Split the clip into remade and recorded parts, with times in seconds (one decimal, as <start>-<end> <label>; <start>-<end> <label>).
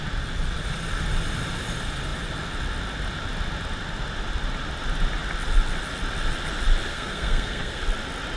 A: 0.0-6.9 recorded; 6.9-7.8 remade; 7.8-8.4 recorded